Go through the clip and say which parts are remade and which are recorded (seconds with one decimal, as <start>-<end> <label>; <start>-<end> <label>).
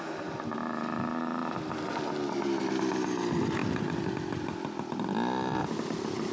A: 0.0-6.3 recorded